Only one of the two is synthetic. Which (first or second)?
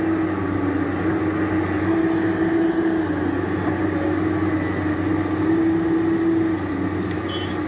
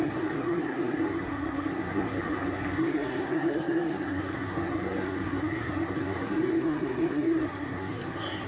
second